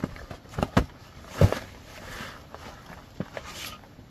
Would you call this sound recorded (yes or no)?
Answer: yes